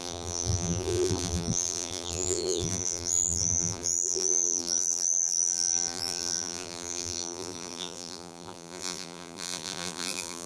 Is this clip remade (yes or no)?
yes